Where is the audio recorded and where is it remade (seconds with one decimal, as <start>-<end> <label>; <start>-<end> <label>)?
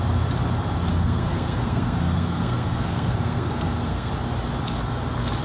0.0-0.9 recorded; 0.9-4.1 remade; 4.1-5.4 recorded